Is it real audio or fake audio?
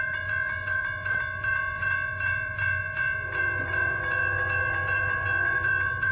fake